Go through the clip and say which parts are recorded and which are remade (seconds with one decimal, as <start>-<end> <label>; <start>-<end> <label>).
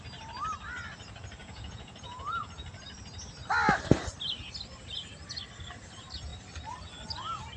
0.0-1.4 recorded; 1.4-2.5 remade; 2.5-7.6 recorded